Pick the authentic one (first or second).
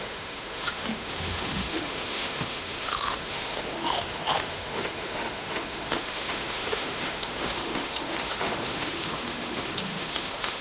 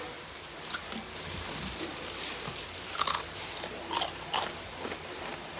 second